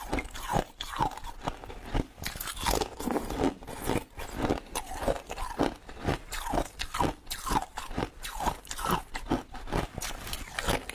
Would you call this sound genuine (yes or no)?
yes